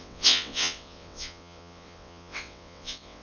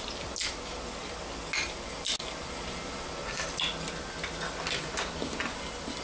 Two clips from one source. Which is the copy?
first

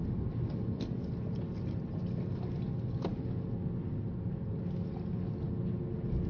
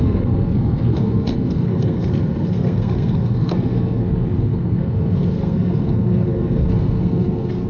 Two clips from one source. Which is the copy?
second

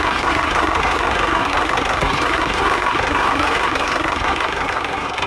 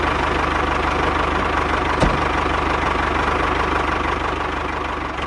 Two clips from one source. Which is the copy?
first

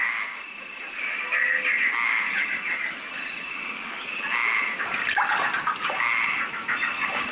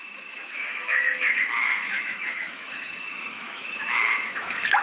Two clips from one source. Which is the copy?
second